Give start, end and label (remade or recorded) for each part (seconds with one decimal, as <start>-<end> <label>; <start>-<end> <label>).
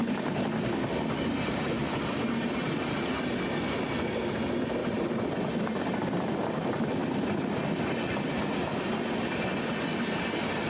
0.0-10.7 recorded